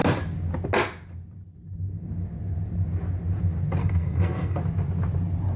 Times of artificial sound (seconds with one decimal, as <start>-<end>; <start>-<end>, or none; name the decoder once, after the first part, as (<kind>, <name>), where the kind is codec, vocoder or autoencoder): 3.8-4.6 (codec, SNAC)